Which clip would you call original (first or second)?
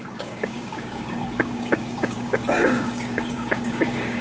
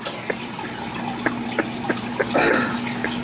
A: second